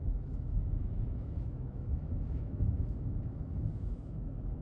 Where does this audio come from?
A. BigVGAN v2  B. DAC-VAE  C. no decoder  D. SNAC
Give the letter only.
B